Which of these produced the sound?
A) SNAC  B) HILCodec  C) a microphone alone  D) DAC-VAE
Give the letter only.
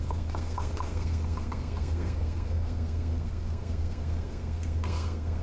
A